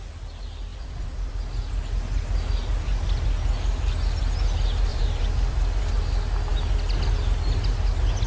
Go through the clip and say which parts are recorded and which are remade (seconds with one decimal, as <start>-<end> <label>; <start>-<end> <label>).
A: 0.0-0.7 recorded; 0.7-1.3 remade; 1.3-4.9 recorded; 4.9-5.8 remade; 5.8-8.3 recorded